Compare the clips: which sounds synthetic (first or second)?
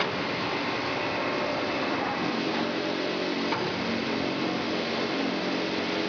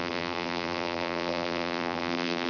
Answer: second